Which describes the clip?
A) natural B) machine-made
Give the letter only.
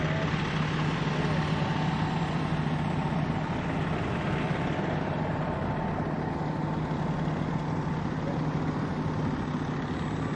A